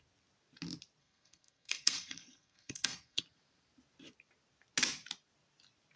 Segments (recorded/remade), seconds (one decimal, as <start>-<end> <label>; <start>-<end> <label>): 0.0-1.0 recorded; 1.0-3.2 remade; 3.2-6.0 recorded